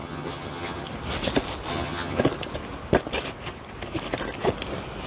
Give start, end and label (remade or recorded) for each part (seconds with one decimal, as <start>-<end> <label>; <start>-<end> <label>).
0.0-0.9 remade; 0.9-1.7 recorded; 1.7-2.2 remade; 2.2-5.1 recorded